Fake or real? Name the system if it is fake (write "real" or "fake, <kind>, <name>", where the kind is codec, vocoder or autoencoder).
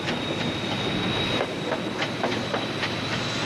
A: real